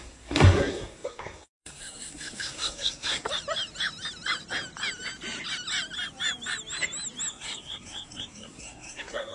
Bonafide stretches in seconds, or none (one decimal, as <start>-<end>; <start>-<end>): 3.3-7.3